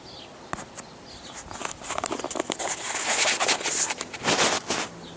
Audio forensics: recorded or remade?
recorded